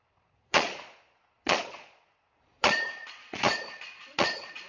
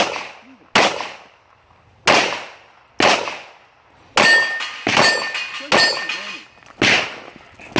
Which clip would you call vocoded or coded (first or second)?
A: first